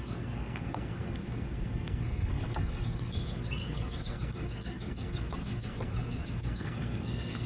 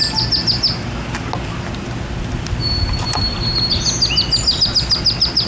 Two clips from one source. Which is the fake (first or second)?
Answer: first